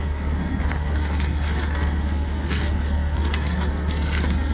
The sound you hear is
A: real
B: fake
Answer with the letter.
B